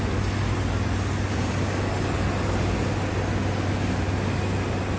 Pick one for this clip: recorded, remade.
recorded